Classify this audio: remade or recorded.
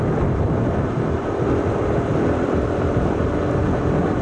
recorded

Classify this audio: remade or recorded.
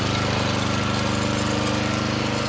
recorded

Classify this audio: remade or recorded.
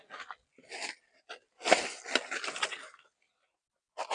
recorded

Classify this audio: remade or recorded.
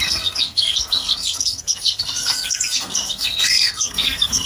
remade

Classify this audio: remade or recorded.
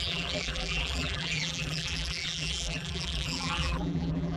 remade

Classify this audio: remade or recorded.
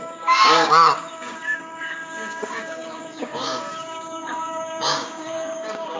remade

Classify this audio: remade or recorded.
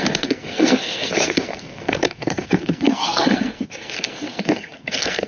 remade